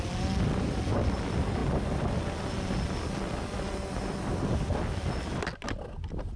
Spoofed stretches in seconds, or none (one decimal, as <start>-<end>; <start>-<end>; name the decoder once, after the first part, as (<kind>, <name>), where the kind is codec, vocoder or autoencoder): none